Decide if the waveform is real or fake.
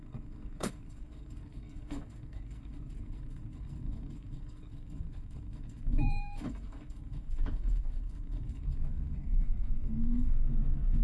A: fake